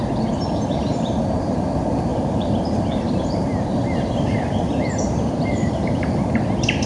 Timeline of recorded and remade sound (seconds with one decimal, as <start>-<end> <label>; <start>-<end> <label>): 0.0-2.1 recorded; 2.1-6.1 remade; 6.1-6.9 recorded